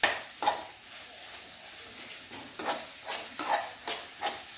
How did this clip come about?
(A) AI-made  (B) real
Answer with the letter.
B